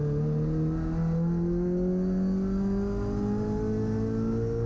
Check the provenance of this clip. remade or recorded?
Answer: recorded